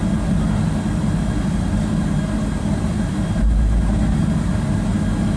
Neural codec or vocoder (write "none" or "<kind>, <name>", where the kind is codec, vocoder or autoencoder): none